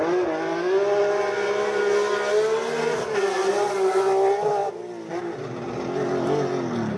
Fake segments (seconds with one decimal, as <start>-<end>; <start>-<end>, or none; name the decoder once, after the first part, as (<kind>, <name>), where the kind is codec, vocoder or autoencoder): none